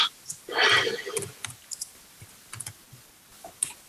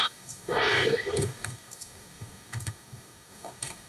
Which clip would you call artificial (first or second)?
second